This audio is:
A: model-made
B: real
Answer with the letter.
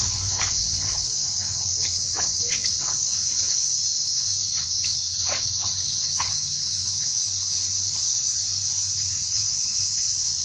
A